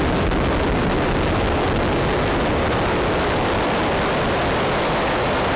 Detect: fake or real real